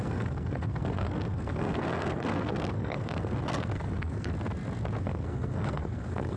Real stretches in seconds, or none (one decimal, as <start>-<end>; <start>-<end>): 4.3-5.0

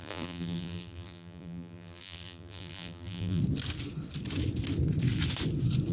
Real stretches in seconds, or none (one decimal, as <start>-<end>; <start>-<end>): 3.4-5.9

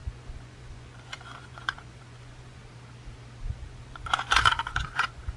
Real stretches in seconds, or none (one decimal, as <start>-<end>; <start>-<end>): 2.6-3.4

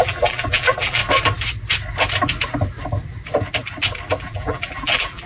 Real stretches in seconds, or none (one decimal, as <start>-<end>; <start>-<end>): 1.0-4.2

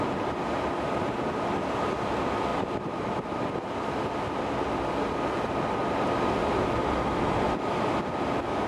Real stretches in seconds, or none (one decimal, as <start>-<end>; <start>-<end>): 0.0-2.5; 3.4-8.7

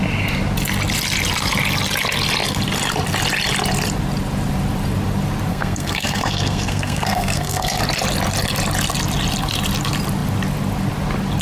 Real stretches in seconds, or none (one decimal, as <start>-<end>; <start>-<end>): 0.0-5.5; 7.8-11.4

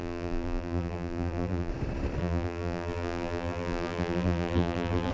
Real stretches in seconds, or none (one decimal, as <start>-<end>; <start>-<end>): 1.7-2.2